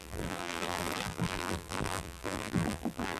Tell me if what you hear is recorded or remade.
remade